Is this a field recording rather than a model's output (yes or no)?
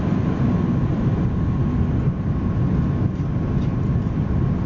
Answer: yes